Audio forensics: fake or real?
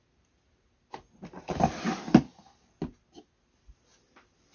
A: real